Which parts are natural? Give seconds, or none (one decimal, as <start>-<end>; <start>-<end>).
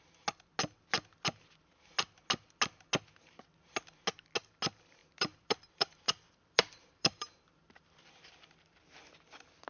0.0-5.0; 8.9-9.7